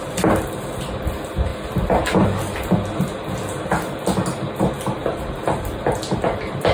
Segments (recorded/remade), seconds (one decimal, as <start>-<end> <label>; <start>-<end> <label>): 0.0-6.7 recorded